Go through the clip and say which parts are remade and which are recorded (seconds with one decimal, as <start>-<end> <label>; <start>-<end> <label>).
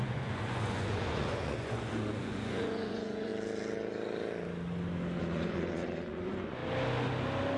0.0-3.3 remade; 3.3-5.2 recorded; 5.2-6.6 remade; 6.6-7.6 recorded